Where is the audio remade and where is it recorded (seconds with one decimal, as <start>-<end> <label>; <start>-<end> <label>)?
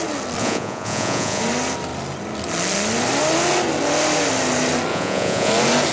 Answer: 0.0-0.4 recorded; 0.4-1.4 remade; 1.4-4.9 recorded; 4.9-5.5 remade; 5.5-5.9 recorded